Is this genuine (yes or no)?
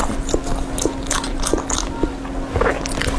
yes